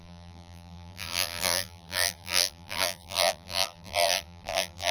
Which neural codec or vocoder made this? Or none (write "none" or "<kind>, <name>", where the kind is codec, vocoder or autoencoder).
vocoder, BigVGAN v2